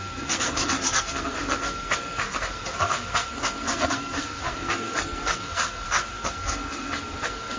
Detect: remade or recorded remade